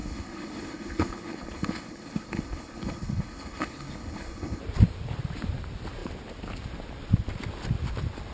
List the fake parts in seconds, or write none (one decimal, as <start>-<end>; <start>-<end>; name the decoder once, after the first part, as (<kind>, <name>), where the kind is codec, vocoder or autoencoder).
0.0-4.6 (codec, HILCodec)